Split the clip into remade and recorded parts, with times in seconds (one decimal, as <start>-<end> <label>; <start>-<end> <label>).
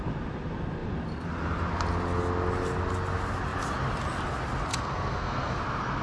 0.0-4.7 recorded; 4.7-5.6 remade; 5.6-6.0 recorded